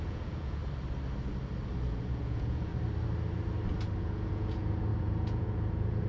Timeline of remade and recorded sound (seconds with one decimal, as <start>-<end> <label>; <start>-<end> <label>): 0.0-0.6 remade; 0.6-1.9 recorded; 1.9-2.7 remade; 2.7-4.0 recorded; 4.0-6.1 remade